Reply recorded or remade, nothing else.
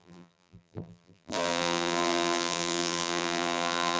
remade